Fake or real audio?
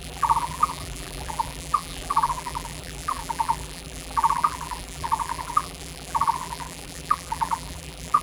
fake